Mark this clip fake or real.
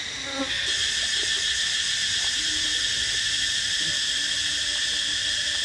real